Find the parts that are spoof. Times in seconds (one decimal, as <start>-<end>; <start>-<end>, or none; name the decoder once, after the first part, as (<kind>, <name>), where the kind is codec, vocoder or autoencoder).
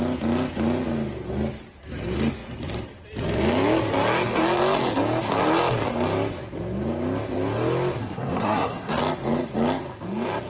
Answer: 8.0-9.0 (codec, SNAC)